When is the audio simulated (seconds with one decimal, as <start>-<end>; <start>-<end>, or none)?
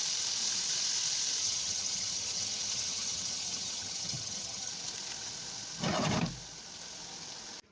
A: 1.4-4.7